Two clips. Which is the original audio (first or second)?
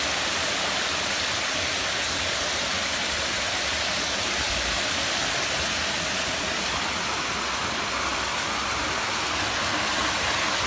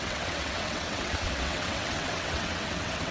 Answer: first